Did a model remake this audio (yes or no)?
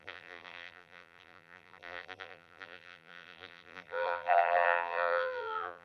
yes